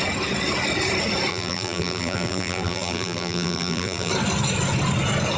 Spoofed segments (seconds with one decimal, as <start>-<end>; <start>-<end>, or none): 1.3-4.1